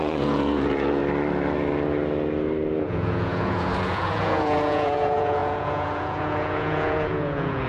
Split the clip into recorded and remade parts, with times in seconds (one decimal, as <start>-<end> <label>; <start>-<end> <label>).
0.0-1.0 remade; 1.0-2.8 recorded; 2.8-7.7 remade